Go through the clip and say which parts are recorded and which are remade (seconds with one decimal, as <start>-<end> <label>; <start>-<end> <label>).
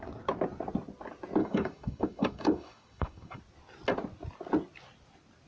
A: 0.0-1.4 recorded; 1.4-3.4 remade; 3.4-5.5 recorded